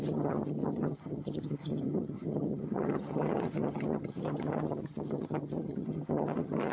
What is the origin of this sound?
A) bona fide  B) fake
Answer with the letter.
B